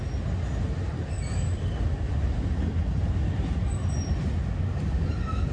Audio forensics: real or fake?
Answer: real